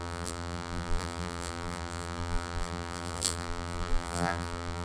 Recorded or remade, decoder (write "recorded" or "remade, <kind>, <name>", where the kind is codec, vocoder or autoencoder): remade, vocoder, BigVGAN v2